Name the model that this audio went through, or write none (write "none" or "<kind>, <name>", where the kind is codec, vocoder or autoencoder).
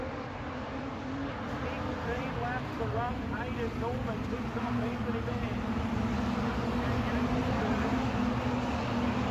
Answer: none